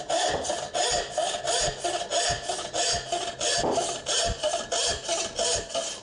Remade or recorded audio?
recorded